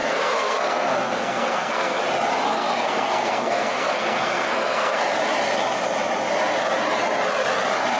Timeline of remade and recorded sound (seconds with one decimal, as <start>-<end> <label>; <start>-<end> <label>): 0.0-2.0 remade; 2.0-2.5 recorded; 2.5-5.0 remade; 5.0-8.0 recorded